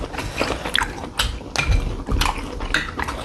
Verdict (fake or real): real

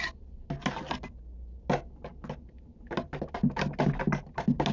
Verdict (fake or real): real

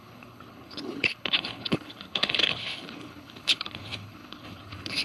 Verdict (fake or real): fake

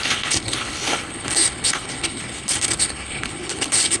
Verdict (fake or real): fake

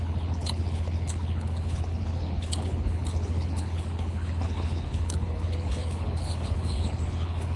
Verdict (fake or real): fake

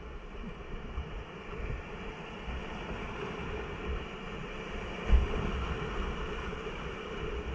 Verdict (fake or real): real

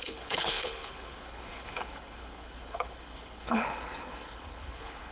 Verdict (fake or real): fake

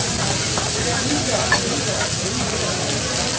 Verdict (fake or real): real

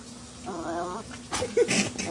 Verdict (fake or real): real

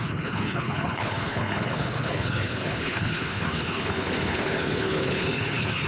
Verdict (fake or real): fake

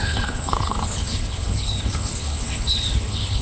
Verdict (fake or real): fake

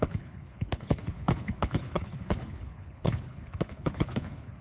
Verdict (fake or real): fake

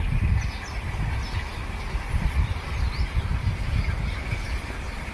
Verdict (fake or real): real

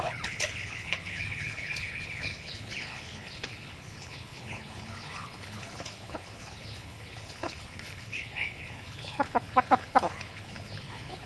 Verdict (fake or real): fake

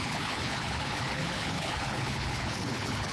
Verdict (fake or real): fake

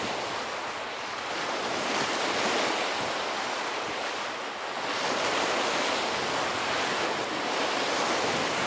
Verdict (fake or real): real